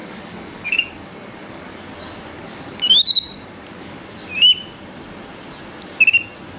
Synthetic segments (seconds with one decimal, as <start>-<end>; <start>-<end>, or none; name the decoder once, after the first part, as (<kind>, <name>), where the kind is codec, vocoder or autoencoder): 0.0-1.8 (codec, DAC); 2.3-4.0